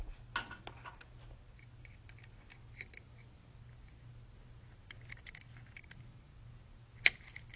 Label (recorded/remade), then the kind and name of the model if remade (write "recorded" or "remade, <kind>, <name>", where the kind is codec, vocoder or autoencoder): recorded